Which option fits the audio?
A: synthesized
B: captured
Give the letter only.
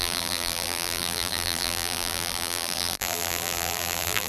A